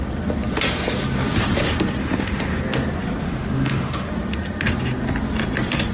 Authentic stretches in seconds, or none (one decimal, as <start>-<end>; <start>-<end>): 0.0-2.0; 2.6-3.2; 4.1-5.9